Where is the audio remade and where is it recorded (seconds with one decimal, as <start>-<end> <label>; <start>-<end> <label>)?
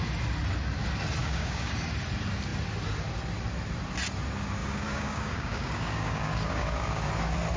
0.0-1.2 recorded; 1.2-1.7 remade; 1.7-4.6 recorded; 4.6-7.1 remade; 7.1-7.6 recorded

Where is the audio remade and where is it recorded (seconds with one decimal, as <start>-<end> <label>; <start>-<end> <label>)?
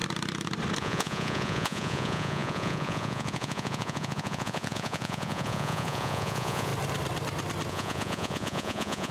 0.0-0.8 recorded; 0.8-6.7 remade; 6.7-7.7 recorded; 7.7-9.1 remade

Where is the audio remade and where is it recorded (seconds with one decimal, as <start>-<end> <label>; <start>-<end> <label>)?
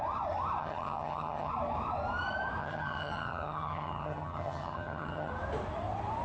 0.0-0.6 recorded; 0.6-1.5 remade; 1.5-2.6 recorded; 2.6-5.3 remade; 5.3-6.2 recorded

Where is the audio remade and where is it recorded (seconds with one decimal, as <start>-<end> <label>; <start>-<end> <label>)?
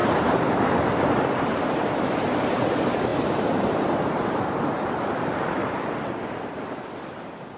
0.0-5.6 remade; 5.6-6.4 recorded; 6.4-7.6 remade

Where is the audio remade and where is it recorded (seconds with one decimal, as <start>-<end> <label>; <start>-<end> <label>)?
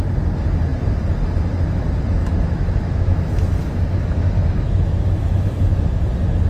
0.0-2.2 recorded; 2.2-6.1 remade; 6.1-6.5 recorded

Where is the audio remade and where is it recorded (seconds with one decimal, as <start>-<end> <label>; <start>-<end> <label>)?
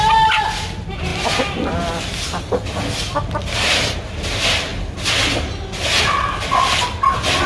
0.0-7.5 recorded